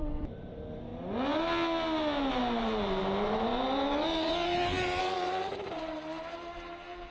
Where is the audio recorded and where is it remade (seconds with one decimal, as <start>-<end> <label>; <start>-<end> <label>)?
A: 0.0-0.9 remade; 0.9-2.3 recorded; 2.3-7.1 remade

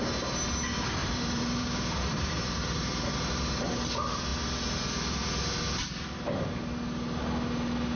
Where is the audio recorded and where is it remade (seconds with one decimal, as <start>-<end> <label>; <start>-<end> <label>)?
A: 0.0-1.0 recorded; 1.0-3.9 remade; 3.9-8.0 recorded

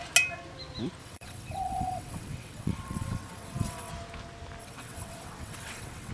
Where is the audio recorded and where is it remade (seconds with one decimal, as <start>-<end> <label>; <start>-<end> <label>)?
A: 0.0-1.0 recorded; 1.0-3.9 remade; 3.9-4.6 recorded; 4.6-6.1 remade

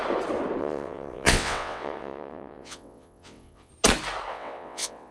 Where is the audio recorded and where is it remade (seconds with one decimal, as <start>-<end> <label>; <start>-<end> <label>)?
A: 0.0-0.6 recorded; 0.6-3.7 remade; 3.7-4.3 recorded; 4.3-5.1 remade

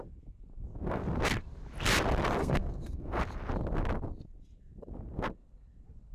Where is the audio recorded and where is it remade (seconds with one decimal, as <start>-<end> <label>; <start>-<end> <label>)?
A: 0.0-2.4 recorded; 2.4-3.2 remade; 3.2-6.1 recorded